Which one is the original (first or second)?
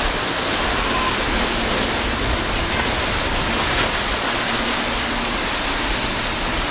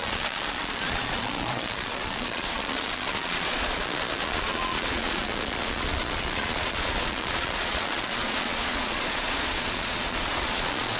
first